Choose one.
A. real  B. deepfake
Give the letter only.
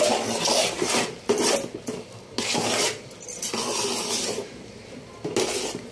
A